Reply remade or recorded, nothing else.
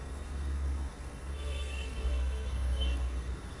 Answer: remade